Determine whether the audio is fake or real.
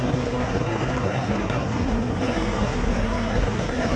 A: fake